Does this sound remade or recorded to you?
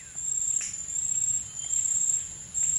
recorded